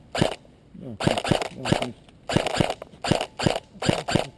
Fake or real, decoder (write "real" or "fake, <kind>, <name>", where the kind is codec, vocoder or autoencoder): real